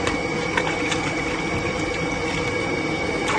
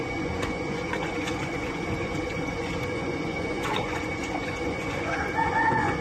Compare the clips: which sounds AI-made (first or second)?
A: second